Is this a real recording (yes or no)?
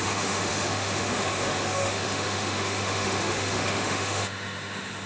no